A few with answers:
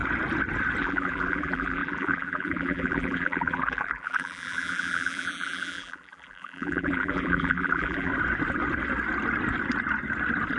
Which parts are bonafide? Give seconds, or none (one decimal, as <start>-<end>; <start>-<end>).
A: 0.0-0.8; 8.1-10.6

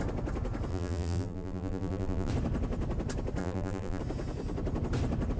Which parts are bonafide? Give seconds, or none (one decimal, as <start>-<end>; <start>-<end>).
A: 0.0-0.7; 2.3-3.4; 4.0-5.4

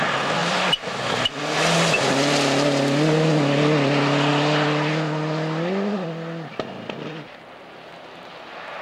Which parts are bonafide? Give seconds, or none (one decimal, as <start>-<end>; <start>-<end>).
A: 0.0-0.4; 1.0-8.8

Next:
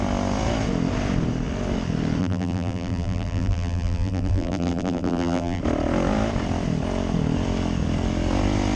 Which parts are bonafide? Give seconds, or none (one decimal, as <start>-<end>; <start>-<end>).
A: 0.0-2.2; 5.6-8.8

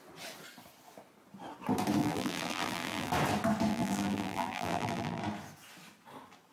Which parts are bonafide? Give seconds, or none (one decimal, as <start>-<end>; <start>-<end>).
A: 0.0-2.0; 3.1-3.7; 5.2-6.5

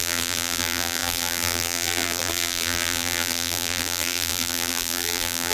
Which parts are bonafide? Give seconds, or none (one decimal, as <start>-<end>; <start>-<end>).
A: none

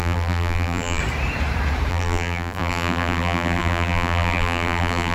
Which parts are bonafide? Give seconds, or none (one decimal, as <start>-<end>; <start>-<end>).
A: 1.0-1.9

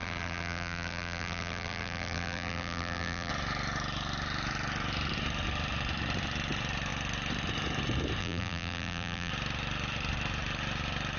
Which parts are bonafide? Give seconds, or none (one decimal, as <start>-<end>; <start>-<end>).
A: 3.3-8.2; 9.3-11.2